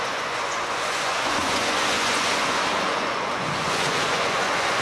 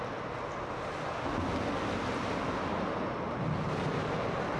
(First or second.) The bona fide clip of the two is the second